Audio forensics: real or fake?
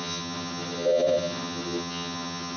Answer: fake